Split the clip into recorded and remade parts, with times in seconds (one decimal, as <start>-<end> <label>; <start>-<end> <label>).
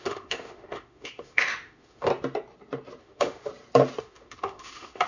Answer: 0.0-2.1 remade; 2.1-3.0 recorded; 3.0-3.5 remade; 3.5-4.0 recorded; 4.0-5.1 remade